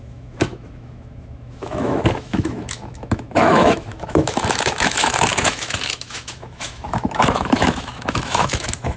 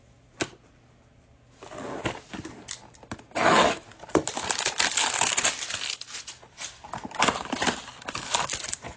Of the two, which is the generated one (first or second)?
first